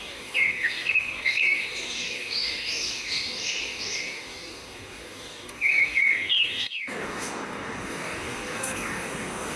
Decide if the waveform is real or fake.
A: fake